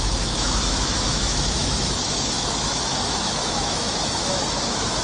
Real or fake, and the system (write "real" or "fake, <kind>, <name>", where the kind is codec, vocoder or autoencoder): fake, autoencoder, DAC-VAE